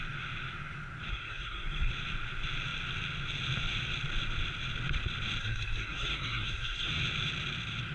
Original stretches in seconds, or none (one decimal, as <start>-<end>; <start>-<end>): 0.0-1.1; 1.9-5.4; 6.9-7.9